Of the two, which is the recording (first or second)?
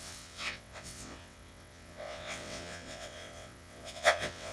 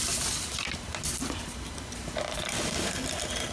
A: second